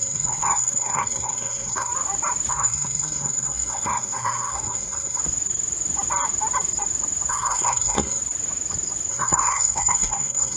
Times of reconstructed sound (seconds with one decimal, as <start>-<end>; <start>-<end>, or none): 0.0-1.9; 2.5-5.2; 7.3-8.2; 9.1-10.6